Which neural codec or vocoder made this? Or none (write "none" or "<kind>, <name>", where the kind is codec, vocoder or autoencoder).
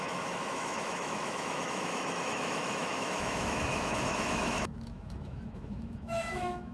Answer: autoencoder, DAC-VAE